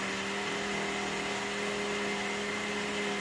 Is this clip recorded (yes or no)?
yes